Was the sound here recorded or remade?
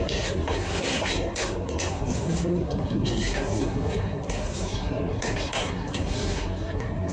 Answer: remade